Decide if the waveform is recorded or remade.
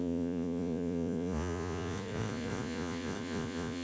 remade